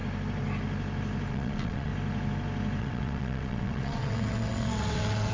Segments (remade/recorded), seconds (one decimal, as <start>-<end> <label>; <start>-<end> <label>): 0.0-1.3 recorded; 1.3-1.9 remade; 1.9-2.8 recorded; 2.8-5.3 remade